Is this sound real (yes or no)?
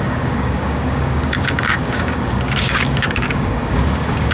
no